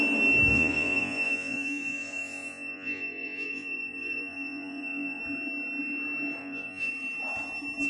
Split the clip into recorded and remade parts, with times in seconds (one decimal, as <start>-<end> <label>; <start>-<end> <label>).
0.0-0.5 recorded; 0.5-5.2 remade; 5.2-6.4 recorded; 6.4-6.9 remade; 6.9-7.9 recorded